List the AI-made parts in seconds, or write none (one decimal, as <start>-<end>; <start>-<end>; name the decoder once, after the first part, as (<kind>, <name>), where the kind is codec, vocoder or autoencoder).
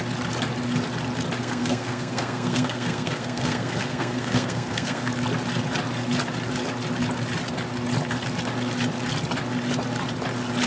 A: 1.4-5.1 (codec, SNAC)